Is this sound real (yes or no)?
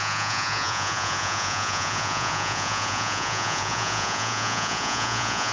no